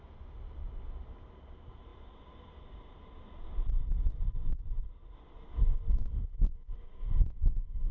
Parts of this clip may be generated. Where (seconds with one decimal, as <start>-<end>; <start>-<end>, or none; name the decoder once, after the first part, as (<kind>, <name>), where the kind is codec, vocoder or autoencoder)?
none